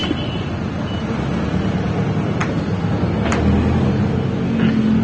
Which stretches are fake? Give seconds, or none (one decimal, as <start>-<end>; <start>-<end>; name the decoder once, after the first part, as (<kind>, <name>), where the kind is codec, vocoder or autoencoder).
none